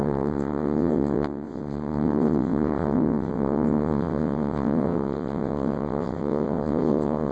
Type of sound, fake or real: fake